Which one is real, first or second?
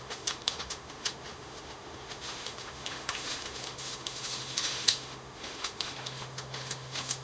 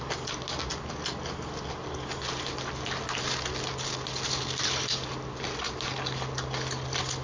second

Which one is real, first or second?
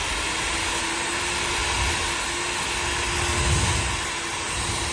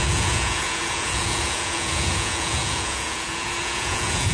first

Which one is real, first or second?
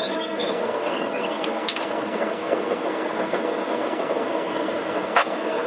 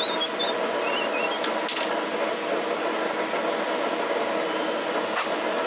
second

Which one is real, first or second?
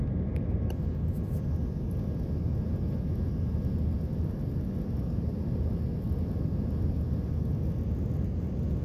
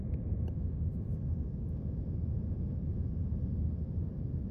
first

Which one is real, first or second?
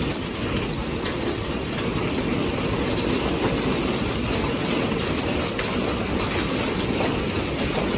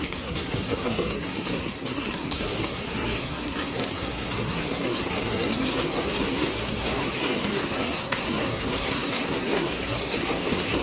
first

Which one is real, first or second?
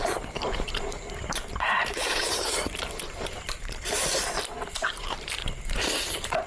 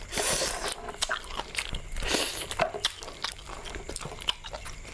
second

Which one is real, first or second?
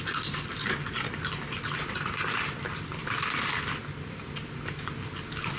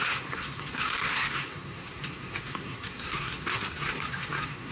first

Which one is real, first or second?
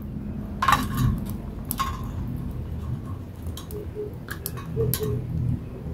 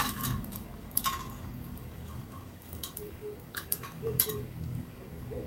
first